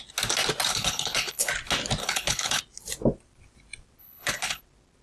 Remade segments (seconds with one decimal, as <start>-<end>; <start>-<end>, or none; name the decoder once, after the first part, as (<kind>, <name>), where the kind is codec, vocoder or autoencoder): 0.7-1.5 (codec, HILCodec); 2.0-2.6; 4.0-4.6

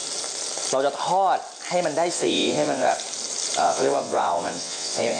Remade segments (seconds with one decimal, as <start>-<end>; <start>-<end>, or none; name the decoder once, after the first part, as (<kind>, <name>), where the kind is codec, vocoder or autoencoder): 2.1-2.9 (vocoder, WaveNeXt); 3.6-5.2

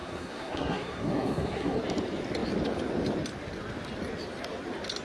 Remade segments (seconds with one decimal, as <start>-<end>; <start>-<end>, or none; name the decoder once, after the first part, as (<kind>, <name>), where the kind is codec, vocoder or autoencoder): 0.0-1.8 (codec, SNAC)

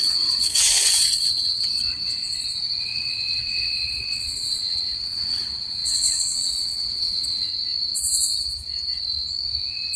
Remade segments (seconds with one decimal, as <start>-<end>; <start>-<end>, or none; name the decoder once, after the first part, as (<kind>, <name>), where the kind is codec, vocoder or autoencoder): 0.0-2.2 (vocoder, WaveNeXt); 2.8-7.5

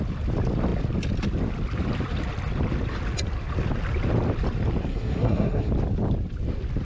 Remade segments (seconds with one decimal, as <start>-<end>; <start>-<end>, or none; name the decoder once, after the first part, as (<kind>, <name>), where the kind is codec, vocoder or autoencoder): 4.9-5.7 (codec, SNAC)

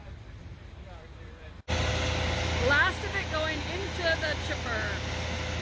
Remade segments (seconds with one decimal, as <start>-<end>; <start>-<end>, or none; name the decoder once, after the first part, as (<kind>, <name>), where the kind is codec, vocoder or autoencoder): 0.0-1.9 (vocoder, BigVGAN v2)

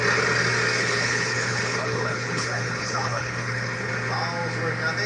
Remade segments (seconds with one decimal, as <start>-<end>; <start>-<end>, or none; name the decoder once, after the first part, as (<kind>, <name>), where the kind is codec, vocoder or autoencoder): 0.8-3.9 (codec, HILCodec)